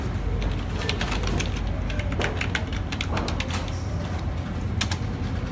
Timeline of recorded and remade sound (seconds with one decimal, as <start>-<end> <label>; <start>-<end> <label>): 0.0-5.5 recorded